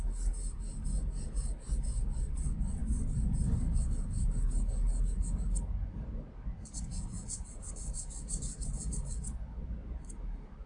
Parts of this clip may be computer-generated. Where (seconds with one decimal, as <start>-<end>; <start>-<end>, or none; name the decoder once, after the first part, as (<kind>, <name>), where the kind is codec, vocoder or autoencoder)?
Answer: none